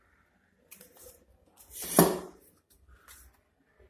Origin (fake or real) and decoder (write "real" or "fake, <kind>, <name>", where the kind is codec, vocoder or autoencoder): real